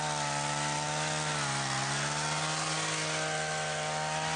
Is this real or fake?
real